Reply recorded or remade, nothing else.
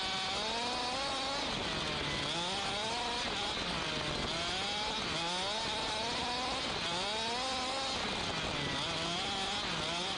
recorded